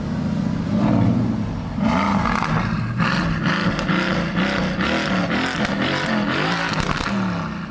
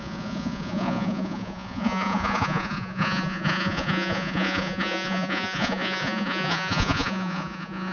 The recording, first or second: first